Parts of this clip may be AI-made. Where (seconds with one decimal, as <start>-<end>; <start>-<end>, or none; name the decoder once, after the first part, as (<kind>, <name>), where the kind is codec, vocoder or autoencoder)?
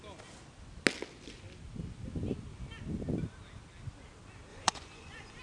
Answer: 4.5-5.4 (vocoder, Vocos)